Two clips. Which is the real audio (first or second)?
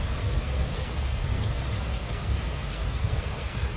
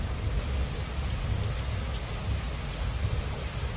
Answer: second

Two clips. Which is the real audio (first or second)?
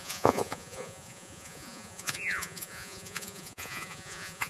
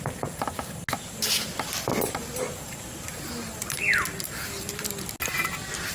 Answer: second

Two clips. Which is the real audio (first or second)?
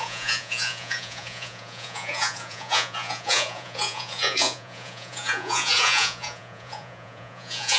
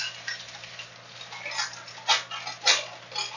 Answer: second